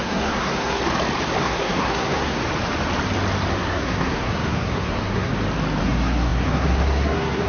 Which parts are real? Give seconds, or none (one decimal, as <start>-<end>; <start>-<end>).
0.8-1.4; 2.4-3.5; 5.3-5.8